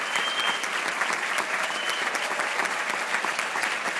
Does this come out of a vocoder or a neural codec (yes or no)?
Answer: yes